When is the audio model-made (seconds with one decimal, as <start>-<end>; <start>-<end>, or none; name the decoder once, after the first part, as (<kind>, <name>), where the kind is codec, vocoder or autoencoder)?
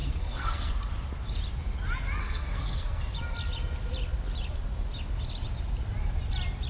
0.0-0.7 (codec, SNAC); 2.2-3.0